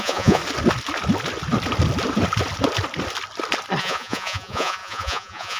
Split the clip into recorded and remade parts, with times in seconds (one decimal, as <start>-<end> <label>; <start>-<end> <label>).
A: 0.0-0.4 remade; 0.4-3.8 recorded; 3.8-5.6 remade